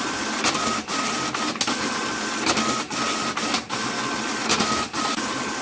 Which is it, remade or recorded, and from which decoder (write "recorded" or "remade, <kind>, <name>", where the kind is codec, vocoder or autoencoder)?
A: recorded